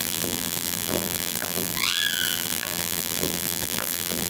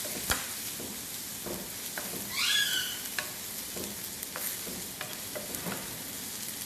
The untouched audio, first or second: second